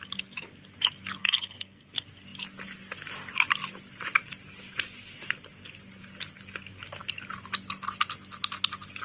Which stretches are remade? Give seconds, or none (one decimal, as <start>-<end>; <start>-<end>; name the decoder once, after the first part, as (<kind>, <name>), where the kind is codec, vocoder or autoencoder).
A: 1.2-1.9 (codec, SNAC)

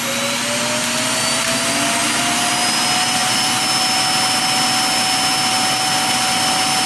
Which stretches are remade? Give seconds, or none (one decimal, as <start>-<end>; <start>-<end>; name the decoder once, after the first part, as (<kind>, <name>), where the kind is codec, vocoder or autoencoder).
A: none

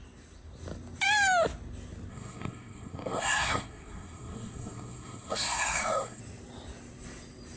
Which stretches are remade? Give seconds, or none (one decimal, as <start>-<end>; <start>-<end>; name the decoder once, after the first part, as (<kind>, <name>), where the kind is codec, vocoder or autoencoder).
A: 2.1-6.2 (codec, SNAC)

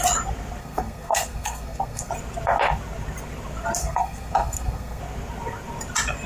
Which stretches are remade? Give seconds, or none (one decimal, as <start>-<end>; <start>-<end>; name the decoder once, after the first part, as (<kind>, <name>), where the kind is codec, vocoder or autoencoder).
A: 0.6-2.1 (codec, SNAC); 3.8-5.0